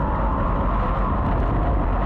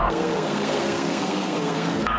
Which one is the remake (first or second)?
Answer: second